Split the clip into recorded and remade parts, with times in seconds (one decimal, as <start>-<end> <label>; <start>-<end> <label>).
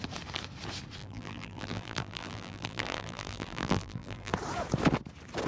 0.0-1.0 recorded; 1.0-4.3 remade; 4.3-5.5 recorded